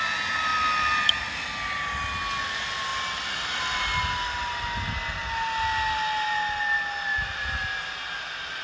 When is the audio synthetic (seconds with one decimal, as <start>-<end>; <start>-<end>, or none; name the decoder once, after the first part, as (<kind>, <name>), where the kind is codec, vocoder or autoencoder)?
none